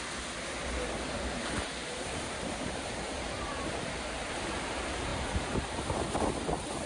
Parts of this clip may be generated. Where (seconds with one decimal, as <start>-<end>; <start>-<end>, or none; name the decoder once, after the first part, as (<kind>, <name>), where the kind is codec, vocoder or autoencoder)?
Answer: 1.8-3.9 (vocoder, BigVGAN v2); 5.1-6.1